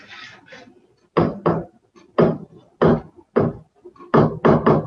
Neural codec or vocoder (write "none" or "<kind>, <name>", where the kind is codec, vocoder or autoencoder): none